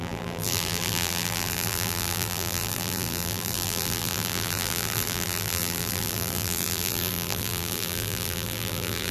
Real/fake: fake